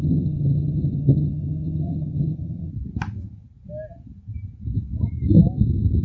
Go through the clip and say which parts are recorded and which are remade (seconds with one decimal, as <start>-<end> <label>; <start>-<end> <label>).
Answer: 0.0-2.7 remade; 2.7-6.0 recorded